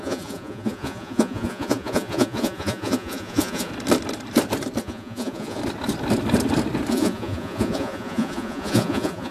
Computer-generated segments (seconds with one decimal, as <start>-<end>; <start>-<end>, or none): 0.0-3.7; 4.8-5.6; 6.9-9.3